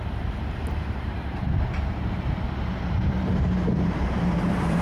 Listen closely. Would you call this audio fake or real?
fake